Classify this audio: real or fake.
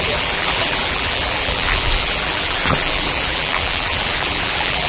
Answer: fake